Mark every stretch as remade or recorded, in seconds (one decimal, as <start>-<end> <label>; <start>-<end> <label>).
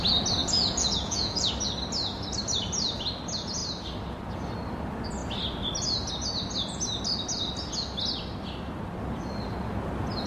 0.0-0.4 recorded; 0.4-1.5 remade; 1.5-10.3 recorded